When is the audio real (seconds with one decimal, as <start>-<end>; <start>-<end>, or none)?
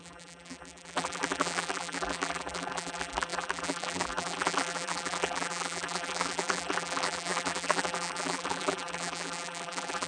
none